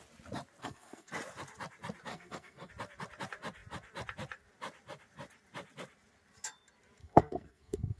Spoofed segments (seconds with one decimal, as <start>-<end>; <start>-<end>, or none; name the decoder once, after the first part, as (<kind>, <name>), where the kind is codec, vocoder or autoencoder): 0.6-1.1 (codec, SNAC); 2.1-2.7; 7.0-8.0

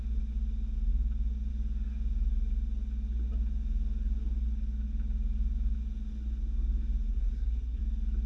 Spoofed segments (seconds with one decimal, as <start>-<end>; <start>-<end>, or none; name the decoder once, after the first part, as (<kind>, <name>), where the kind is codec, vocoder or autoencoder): 7.1-7.8 (codec, SNAC)

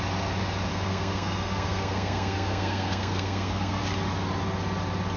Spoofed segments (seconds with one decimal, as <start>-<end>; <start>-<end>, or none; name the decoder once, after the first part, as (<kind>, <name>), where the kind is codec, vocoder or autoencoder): 0.7-3.8 (codec, SNAC)

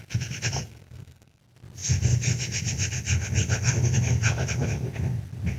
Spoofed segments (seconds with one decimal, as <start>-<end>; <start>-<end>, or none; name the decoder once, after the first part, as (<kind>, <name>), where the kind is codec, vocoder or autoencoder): 0.6-1.4 (codec, SNAC)

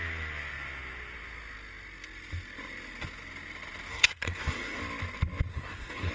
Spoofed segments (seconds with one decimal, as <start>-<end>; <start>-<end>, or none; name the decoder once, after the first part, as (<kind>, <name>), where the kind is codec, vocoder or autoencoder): 3.9-4.8 (codec, SNAC); 5.5-6.1

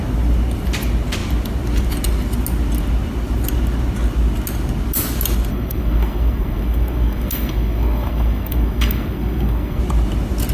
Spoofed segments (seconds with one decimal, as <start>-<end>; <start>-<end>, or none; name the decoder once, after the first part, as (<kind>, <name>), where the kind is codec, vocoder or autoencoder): 5.5-9.8 (codec, SNAC)

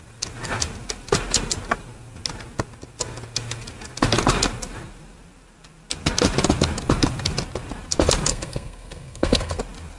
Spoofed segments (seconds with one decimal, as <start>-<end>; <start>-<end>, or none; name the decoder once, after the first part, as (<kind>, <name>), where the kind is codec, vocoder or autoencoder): 8.3-9.6 (codec, SNAC)

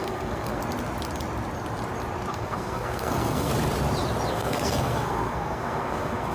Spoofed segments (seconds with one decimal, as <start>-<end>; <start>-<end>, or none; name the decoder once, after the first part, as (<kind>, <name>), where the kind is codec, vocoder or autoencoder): 0.0-0.6 (codec, SNAC); 2.3-3.5; 4.3-6.3